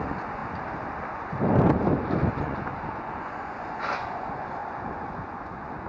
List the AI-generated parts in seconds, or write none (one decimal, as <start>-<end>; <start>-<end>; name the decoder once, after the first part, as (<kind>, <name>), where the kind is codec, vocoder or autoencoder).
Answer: 0.0-0.4 (vocoder, Vocos); 2.4-5.9